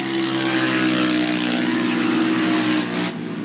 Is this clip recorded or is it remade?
recorded